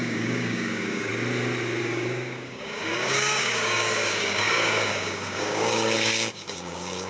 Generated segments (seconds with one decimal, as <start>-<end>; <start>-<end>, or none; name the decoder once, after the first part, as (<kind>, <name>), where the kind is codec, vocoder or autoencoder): 0.0-1.1 (codec, DAC); 1.8-7.1